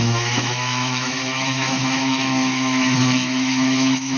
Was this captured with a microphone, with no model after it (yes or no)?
no